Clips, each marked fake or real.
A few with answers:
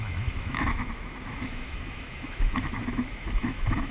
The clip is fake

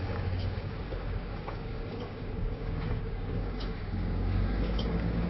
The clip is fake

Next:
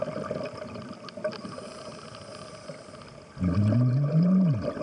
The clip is real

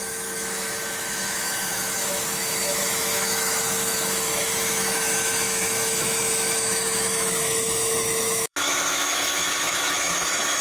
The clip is fake